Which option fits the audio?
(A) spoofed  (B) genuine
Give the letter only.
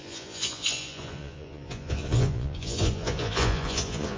A